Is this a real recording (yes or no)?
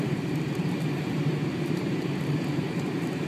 no